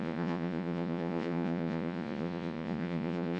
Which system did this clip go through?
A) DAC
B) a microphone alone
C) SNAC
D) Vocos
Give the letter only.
D